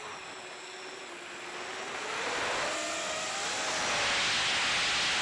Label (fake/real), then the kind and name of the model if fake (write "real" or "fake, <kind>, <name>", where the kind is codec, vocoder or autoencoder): real